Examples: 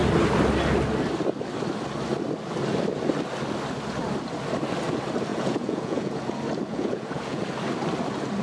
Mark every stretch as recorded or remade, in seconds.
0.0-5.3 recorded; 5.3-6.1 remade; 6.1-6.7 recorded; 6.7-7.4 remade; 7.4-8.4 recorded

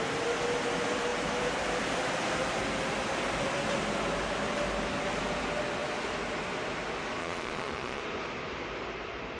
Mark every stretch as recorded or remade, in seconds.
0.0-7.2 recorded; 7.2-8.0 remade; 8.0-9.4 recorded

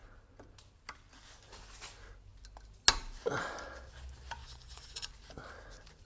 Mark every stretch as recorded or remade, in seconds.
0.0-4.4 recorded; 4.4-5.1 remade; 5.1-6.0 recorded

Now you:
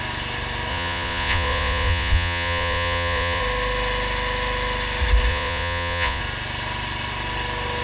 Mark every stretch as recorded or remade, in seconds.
0.0-0.7 recorded; 0.7-3.4 remade; 3.4-5.3 recorded; 5.3-6.2 remade; 6.2-7.8 recorded